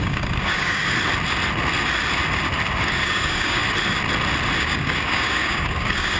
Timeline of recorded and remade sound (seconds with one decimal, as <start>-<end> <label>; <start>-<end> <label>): 0.0-0.8 remade; 0.8-2.8 recorded; 2.8-3.6 remade; 3.6-4.6 recorded; 4.6-6.2 remade

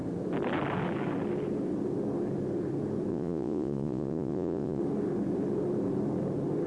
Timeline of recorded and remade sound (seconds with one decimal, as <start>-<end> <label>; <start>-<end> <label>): 0.0-3.1 recorded; 3.1-4.8 remade; 4.8-6.7 recorded

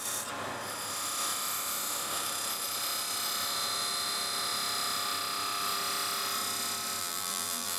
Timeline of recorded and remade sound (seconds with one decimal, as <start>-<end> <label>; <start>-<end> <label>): 0.0-7.0 recorded; 7.0-7.8 remade

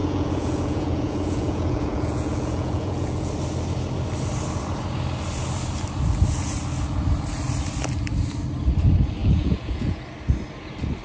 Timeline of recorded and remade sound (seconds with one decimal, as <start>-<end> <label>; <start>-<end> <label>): 0.0-3.3 remade; 3.3-9.2 recorded; 9.2-10.0 remade; 10.0-11.0 recorded

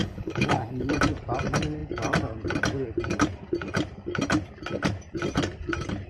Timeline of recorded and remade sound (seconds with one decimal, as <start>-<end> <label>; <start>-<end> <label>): 0.0-0.9 remade; 0.9-6.1 recorded